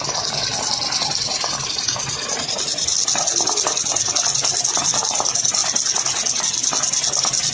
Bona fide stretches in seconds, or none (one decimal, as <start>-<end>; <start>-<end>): 0.0-7.5